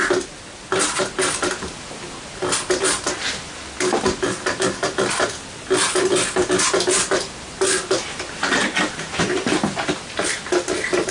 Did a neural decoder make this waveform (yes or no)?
no